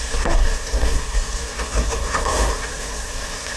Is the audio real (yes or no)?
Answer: no